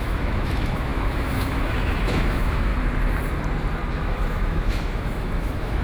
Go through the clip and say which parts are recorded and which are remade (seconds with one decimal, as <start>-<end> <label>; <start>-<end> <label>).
0.0-2.7 remade; 2.7-3.9 recorded; 3.9-5.8 remade